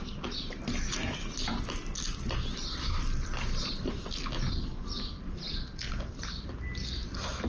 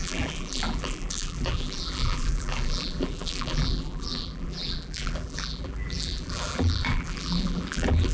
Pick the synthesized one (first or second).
second